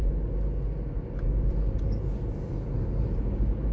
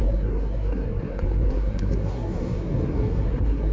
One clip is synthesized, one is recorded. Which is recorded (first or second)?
first